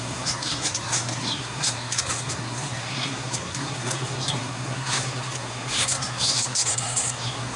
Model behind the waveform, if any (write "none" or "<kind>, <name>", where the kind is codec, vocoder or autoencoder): codec, SNAC